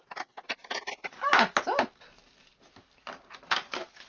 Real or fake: real